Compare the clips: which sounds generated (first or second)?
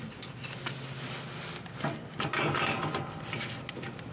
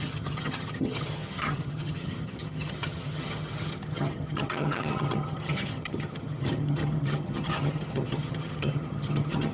second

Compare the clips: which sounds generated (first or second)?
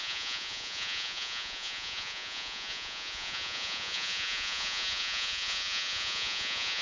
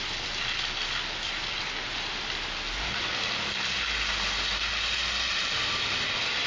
first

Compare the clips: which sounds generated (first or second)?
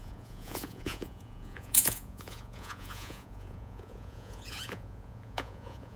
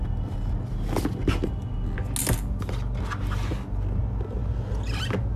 first